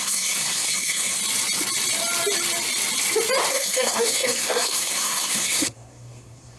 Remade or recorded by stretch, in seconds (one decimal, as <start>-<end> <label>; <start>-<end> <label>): 0.0-1.2 remade; 1.2-3.5 recorded; 3.5-6.6 remade